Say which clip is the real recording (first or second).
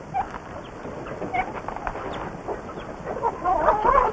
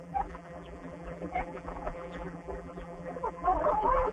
first